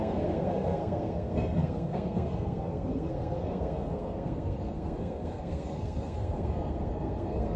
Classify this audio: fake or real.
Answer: fake